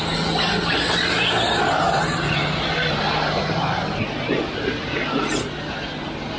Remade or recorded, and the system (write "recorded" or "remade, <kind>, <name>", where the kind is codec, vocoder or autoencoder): recorded